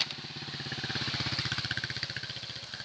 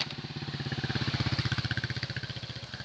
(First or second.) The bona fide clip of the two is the first